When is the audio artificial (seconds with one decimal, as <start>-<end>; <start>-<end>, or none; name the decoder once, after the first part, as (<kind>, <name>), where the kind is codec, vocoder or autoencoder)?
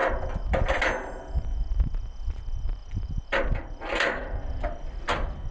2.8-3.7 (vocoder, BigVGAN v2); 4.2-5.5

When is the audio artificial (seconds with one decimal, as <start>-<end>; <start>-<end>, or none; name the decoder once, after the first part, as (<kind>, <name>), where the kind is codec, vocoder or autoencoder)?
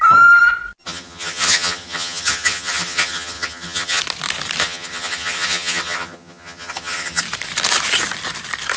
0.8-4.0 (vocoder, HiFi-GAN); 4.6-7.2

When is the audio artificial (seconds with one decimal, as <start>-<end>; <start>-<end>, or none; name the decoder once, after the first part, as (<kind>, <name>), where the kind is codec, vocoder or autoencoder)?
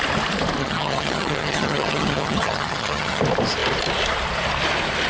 0.6-3.2 (vocoder, HiFi-GAN)